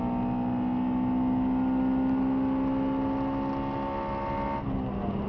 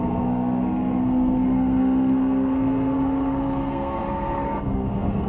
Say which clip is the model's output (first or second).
second